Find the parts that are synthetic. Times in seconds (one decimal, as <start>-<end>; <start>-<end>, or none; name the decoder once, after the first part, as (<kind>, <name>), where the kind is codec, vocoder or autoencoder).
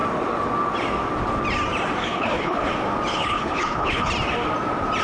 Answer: 2.0-2.7 (codec, HILCodec); 3.1-4.1